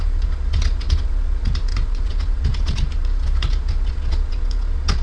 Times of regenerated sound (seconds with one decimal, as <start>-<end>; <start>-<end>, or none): 0.0-5.0